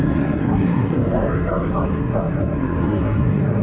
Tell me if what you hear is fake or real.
fake